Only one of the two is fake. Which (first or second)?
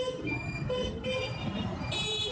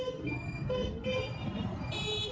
first